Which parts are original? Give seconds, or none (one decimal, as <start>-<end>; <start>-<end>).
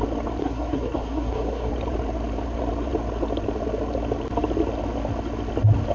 0.0-0.4; 1.7-5.9